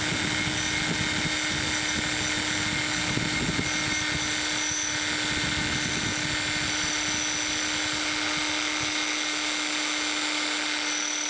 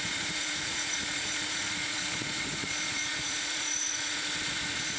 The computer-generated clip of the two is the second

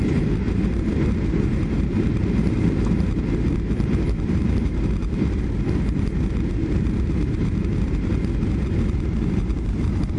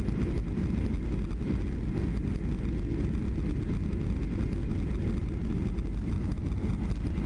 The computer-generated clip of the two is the first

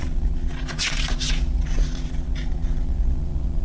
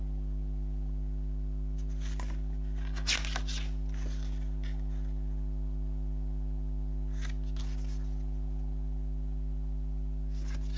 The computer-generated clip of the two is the first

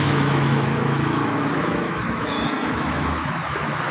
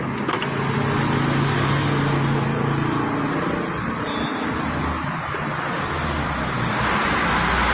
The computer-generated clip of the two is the first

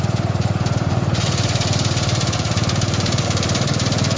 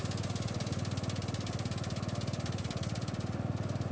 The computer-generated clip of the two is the first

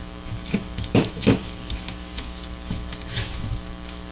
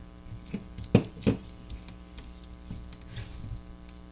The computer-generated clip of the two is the first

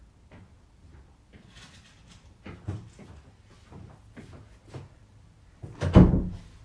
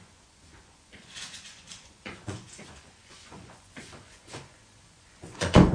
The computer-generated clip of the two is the second